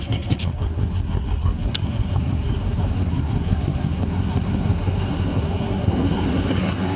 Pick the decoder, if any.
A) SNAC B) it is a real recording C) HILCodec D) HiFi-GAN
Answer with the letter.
A